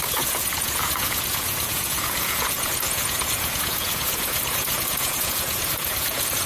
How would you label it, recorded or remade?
remade